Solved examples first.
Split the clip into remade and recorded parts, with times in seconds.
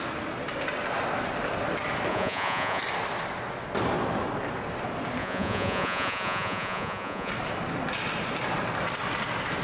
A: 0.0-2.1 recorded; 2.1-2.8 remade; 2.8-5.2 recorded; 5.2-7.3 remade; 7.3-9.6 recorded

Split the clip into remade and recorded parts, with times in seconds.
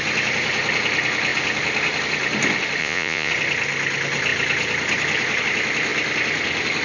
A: 0.0-2.8 recorded; 2.8-3.3 remade; 3.3-6.8 recorded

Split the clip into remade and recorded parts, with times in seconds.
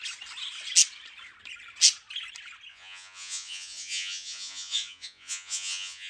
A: 0.0-2.7 recorded; 2.7-6.1 remade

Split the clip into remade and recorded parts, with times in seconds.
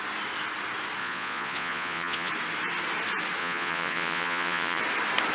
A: 0.0-1.0 recorded; 1.0-2.3 remade; 2.3-3.4 recorded; 3.4-4.8 remade; 4.8-5.3 recorded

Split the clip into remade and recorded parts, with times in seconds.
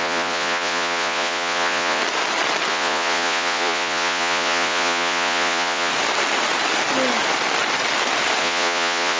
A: 0.0-2.0 remade; 2.0-2.7 recorded; 2.7-5.9 remade; 5.9-8.4 recorded; 8.4-9.2 remade